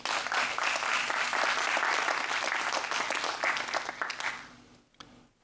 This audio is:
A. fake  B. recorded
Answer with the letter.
B